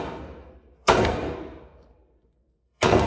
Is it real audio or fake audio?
fake